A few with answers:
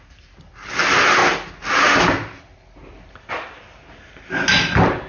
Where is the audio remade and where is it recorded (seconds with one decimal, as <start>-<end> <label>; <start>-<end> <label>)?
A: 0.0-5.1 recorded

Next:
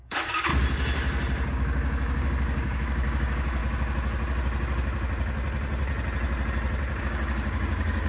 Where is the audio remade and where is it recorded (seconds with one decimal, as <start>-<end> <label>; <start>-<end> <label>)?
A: 0.0-0.5 remade; 0.5-1.5 recorded; 1.5-3.6 remade; 3.6-7.0 recorded; 7.0-8.1 remade

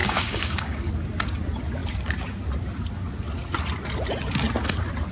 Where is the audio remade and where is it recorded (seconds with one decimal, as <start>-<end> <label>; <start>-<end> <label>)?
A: 0.0-0.9 remade; 0.9-5.1 recorded

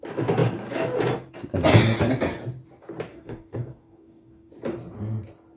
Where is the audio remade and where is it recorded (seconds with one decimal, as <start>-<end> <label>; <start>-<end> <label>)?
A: 0.0-3.1 recorded; 3.1-4.5 remade; 4.5-5.6 recorded

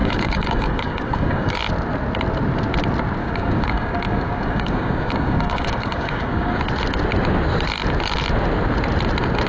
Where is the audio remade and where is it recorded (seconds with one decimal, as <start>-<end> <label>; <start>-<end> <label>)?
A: 0.0-1.6 remade; 1.6-3.2 recorded; 3.2-6.6 remade; 6.6-9.5 recorded